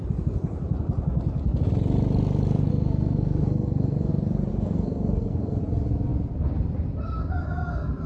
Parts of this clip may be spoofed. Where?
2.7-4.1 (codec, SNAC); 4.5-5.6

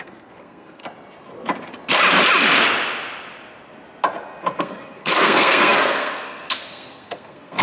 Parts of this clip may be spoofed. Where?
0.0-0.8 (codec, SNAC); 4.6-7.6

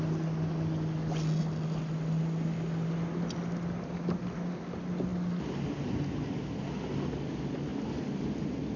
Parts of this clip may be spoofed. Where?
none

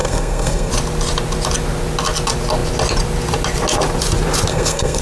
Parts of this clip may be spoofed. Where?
0.0-0.7 (codec, SNAC); 4.5-5.0

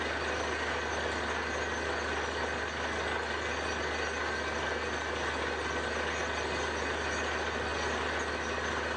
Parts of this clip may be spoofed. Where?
none

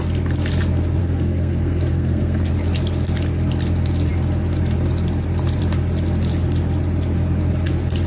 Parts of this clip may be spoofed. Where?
1.0-2.5 (codec, SNAC)

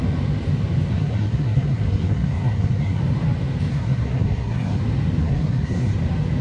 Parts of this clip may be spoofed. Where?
0.9-3.0 (codec, SNAC); 3.7-4.8; 5.2-5.9